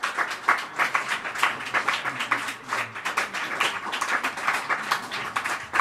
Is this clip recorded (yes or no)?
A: yes